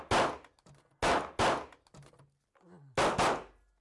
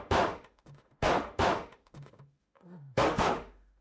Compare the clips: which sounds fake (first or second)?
second